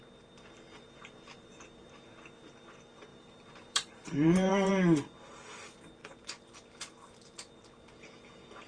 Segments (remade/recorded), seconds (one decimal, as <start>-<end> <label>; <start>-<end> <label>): 0.0-3.1 recorded; 3.1-4.7 remade; 4.7-8.7 recorded